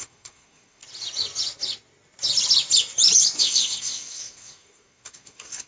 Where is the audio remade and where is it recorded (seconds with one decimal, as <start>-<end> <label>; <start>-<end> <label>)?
0.0-0.8 remade; 0.8-3.4 recorded; 3.4-5.7 remade